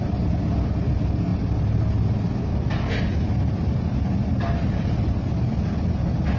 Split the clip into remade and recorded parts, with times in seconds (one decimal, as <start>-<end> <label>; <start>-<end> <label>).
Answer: 0.0-6.4 recorded